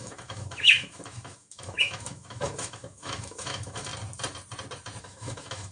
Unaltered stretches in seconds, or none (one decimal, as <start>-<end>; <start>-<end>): 3.9-5.0

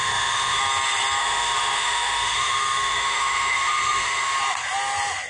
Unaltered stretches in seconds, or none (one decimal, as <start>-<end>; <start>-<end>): 0.6-1.2; 4.4-5.3

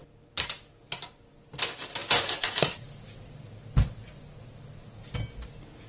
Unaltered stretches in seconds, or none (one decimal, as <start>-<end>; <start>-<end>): 0.0-5.9

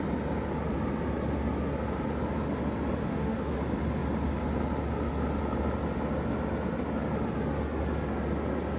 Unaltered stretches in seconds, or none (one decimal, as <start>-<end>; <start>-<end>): 0.0-3.0; 3.6-8.8

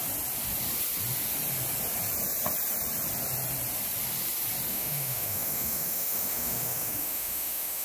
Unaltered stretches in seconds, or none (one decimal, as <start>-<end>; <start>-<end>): 0.0-4.7

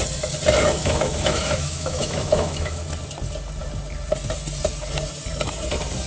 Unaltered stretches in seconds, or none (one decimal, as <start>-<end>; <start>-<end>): 0.0-0.8; 2.8-6.1